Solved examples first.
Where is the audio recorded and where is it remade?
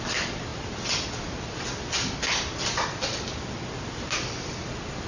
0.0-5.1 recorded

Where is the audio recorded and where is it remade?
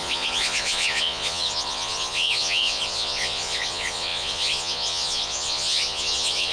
0.0-6.5 remade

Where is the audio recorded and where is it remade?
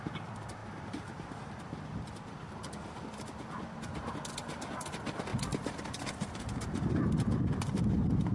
0.0-0.6 recorded; 0.6-1.5 remade; 1.5-8.3 recorded